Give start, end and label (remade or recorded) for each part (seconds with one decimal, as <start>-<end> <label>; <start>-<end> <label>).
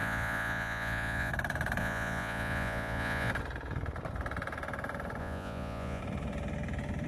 0.0-1.3 remade; 1.3-1.8 recorded; 1.8-3.3 remade; 3.3-5.2 recorded; 5.2-6.0 remade; 6.0-7.1 recorded